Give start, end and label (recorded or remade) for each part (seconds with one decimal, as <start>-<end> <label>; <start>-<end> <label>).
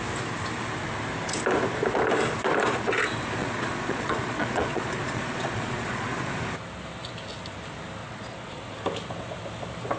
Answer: 0.0-3.4 recorded; 3.4-6.4 remade; 6.4-8.0 recorded; 8.0-8.6 remade; 8.6-10.0 recorded